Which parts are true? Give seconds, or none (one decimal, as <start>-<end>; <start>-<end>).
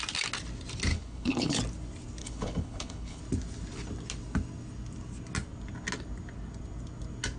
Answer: 0.0-0.9; 1.6-2.2; 3.2-7.4